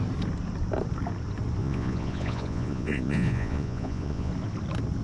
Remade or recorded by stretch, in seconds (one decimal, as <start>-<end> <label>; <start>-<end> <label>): 0.0-1.6 recorded; 1.6-4.3 remade; 4.3-5.0 recorded